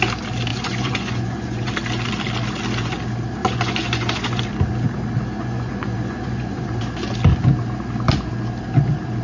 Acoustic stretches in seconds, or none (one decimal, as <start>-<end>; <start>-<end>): 0.0-0.5; 1.7-3.4; 4.4-5.4; 6.8-9.2